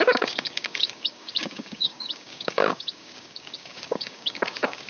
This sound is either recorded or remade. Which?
remade